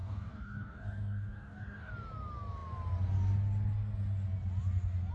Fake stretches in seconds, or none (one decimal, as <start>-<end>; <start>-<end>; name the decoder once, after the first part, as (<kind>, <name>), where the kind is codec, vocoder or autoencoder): 0.0-1.9 (codec, DAC)